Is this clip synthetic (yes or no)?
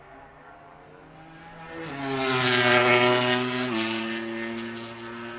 no